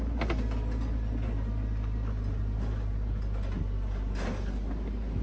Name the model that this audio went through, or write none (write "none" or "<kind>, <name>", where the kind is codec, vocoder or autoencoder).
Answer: none